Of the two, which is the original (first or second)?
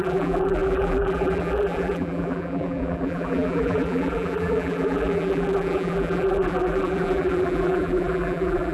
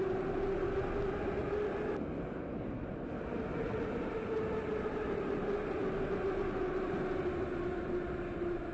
second